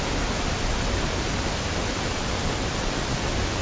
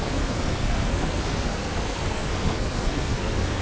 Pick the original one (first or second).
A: first